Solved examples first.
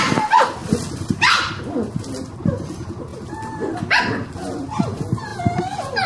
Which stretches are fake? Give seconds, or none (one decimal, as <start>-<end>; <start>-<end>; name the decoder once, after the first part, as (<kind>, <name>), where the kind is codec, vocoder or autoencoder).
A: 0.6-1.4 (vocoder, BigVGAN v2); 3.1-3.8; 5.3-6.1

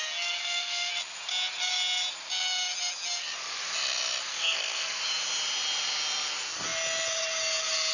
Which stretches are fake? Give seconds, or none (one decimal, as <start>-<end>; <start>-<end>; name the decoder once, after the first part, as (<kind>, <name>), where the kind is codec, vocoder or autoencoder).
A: 0.4-0.9 (codec, SNAC); 4.3-5.0

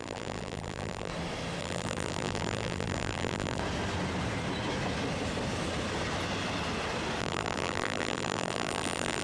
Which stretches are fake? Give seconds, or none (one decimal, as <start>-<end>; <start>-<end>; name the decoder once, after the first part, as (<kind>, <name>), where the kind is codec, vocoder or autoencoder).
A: 0.0-1.1 (vocoder, BigVGAN v2); 1.6-3.6; 7.2-9.2